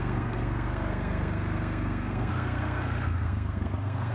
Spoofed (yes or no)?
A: yes